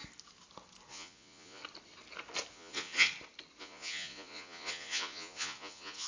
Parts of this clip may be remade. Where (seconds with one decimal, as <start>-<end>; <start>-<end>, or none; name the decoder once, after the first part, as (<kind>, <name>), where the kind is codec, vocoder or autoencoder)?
0.9-1.6 (vocoder, Vocos); 2.5-3.1; 3.6-6.1